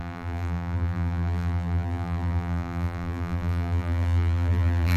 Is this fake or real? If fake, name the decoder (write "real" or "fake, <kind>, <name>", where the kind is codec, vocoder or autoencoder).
fake, vocoder, BigVGAN v2